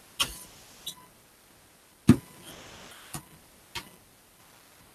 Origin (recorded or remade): recorded